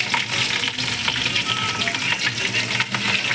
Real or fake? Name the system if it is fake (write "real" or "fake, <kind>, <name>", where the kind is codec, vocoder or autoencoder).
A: real